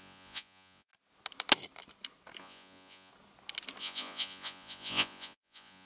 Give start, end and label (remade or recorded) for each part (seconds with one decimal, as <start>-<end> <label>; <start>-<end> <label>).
0.0-0.9 remade; 0.9-2.4 recorded; 2.4-3.1 remade; 3.1-3.8 recorded; 3.8-5.9 remade